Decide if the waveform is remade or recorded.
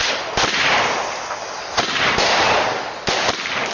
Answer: recorded